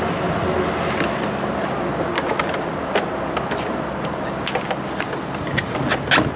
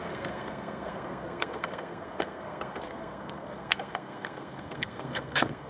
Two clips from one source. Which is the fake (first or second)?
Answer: second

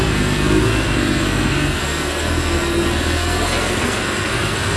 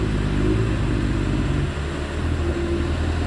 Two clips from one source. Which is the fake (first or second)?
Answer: first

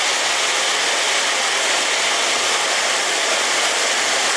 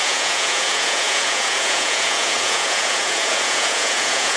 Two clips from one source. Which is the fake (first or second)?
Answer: second